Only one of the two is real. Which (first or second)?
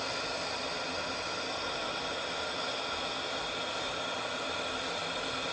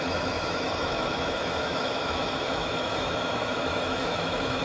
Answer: first